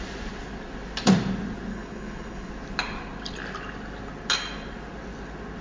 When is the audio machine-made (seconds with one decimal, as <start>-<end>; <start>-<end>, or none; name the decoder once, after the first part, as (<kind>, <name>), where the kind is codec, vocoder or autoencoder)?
1.7-2.5 (codec, HILCodec)